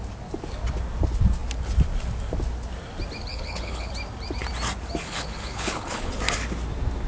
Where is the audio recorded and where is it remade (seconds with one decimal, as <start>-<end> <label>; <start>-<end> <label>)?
0.0-3.3 recorded; 3.3-3.9 remade; 3.9-5.0 recorded; 5.0-6.1 remade; 6.1-7.1 recorded